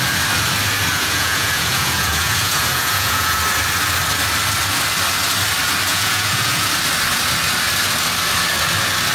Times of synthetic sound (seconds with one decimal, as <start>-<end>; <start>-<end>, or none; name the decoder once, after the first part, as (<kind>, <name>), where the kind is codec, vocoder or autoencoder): 0.9-3.4 (vocoder, Vocos); 5.9-6.7